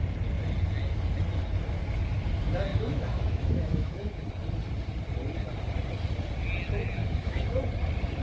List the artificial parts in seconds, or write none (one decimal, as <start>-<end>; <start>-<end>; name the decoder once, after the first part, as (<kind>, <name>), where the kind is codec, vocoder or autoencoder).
2.7-4.2 (autoencoder, DAC-VAE); 7.0-7.7